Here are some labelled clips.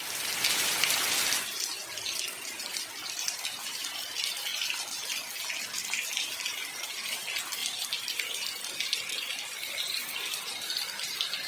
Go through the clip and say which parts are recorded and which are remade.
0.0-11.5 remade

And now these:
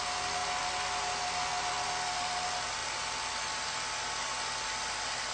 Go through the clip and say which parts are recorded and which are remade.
0.0-5.3 recorded

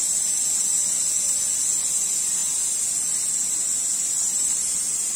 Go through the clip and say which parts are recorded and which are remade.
0.0-5.2 recorded

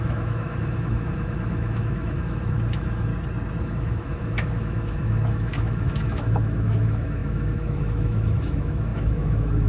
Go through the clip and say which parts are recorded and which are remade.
0.0-3.1 remade; 3.1-3.6 recorded; 3.6-9.7 remade

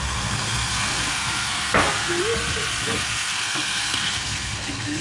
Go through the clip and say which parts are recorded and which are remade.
0.0-2.2 remade; 2.2-2.8 recorded; 2.8-5.0 remade

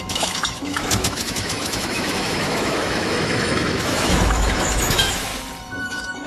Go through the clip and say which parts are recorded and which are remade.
0.0-5.3 remade; 5.3-5.8 recorded; 5.8-6.3 remade

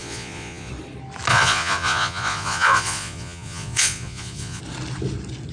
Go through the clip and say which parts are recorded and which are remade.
0.0-0.7 remade; 0.7-1.3 recorded; 1.3-4.6 remade; 4.6-5.5 recorded